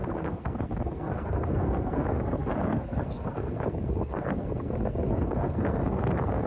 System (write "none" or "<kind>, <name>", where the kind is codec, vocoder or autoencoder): codec, SNAC